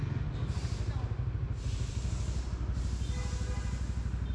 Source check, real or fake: real